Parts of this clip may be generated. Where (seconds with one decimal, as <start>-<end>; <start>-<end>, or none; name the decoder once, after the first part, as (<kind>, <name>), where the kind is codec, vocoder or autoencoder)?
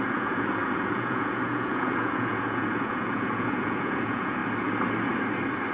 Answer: 0.0-4.4 (vocoder, Vocos)